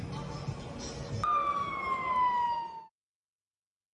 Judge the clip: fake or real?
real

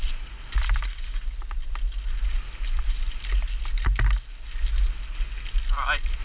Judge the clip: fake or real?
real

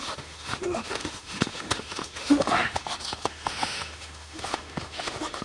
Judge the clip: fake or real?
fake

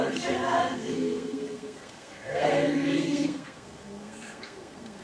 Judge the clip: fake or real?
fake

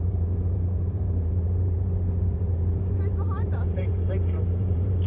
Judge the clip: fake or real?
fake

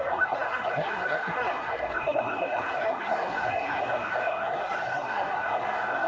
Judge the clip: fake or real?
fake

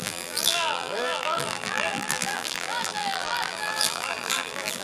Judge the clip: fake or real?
fake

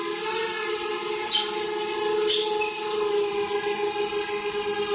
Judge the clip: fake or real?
real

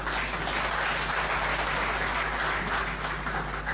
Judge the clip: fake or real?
real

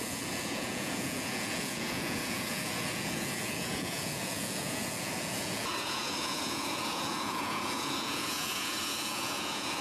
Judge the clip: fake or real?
fake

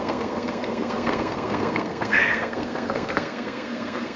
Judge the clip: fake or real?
fake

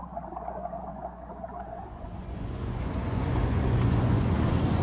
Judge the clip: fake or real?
fake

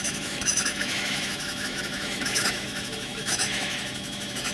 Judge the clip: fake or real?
fake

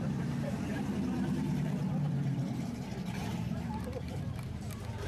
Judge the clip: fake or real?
fake